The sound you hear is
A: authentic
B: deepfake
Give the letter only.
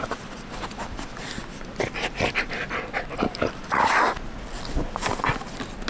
A